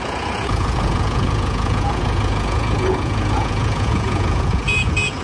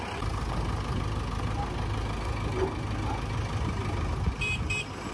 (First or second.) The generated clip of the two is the first